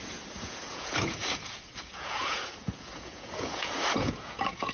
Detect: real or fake fake